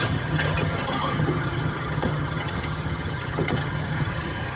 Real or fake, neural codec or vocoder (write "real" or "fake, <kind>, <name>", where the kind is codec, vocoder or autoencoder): fake, vocoder, HiFi-GAN